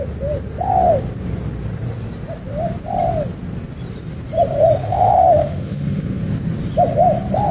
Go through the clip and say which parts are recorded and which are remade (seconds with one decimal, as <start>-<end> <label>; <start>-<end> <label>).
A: 0.0-4.8 recorded; 4.8-6.3 remade; 6.3-7.5 recorded